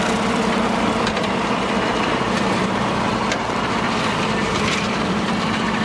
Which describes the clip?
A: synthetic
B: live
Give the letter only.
A